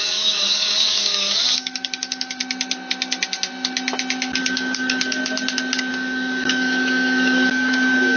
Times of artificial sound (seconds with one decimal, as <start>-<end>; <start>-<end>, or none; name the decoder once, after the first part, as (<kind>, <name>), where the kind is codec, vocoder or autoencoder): 0.0-2.4 (codec, DAC); 4.4-5.2; 5.9-8.2